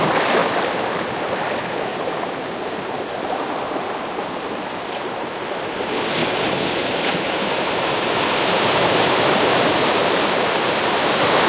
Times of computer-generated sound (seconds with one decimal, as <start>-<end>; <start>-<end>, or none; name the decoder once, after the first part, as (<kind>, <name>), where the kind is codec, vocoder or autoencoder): 1.9-5.3 (vocoder, BigVGAN v2); 6.2-10.7